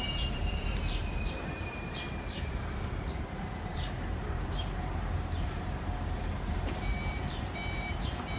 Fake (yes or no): yes